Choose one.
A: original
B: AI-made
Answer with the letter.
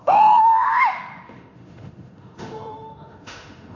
B